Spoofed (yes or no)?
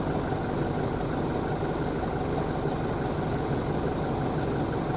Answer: no